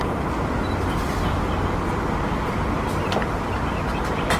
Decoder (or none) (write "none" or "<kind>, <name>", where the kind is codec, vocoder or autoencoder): none